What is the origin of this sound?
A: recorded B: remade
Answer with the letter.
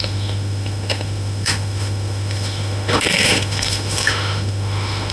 B